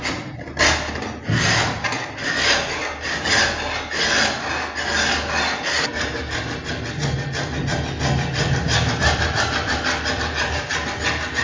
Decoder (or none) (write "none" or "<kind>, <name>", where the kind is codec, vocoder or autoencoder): none